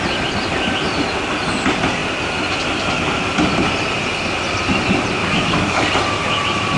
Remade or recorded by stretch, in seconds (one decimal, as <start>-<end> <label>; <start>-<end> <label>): 0.0-5.2 recorded; 5.2-5.9 remade; 5.9-6.8 recorded